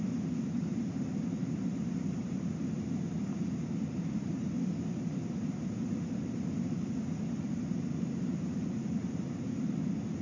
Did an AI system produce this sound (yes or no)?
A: yes